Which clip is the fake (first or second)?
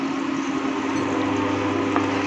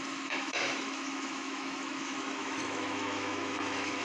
second